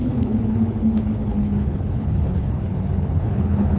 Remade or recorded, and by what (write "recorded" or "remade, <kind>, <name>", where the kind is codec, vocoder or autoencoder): remade, codec, HILCodec